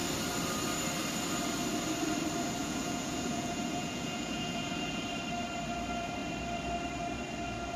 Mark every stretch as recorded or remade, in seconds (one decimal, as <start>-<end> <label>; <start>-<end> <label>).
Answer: 0.0-2.6 recorded; 2.6-5.0 remade; 5.0-7.8 recorded